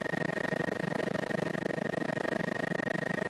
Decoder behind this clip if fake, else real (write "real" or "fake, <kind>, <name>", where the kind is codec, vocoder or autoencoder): real